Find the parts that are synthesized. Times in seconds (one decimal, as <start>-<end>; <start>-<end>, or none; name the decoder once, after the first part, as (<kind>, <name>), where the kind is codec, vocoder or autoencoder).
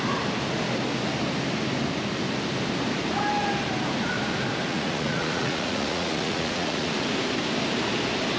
4.7-6.9 (vocoder, Vocos)